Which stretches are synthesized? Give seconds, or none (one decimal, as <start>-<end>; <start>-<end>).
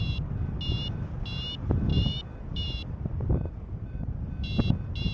1.9-4.6